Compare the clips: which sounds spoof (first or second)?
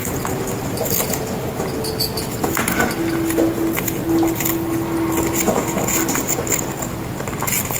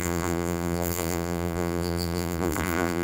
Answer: second